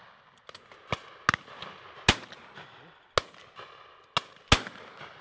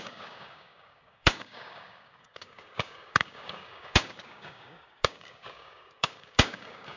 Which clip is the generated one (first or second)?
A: second